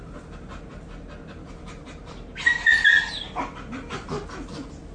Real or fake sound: real